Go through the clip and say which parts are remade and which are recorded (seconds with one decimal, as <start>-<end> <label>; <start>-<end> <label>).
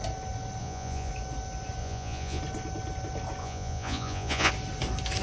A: 0.0-0.6 recorded; 0.6-1.1 remade; 1.1-1.8 recorded; 1.8-2.4 remade; 2.4-3.4 recorded; 3.4-4.5 remade; 4.5-5.2 recorded